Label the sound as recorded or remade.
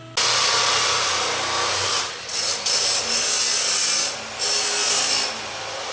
recorded